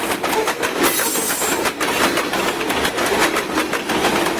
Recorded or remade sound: recorded